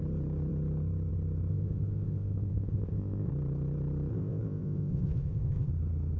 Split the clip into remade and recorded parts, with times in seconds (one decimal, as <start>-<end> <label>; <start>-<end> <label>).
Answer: 0.0-1.5 recorded; 1.5-3.3 remade; 3.3-4.1 recorded; 4.1-5.7 remade; 5.7-6.2 recorded